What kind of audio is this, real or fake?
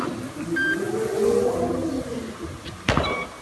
real